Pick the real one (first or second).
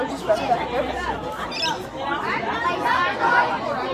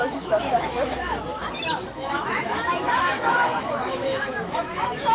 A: first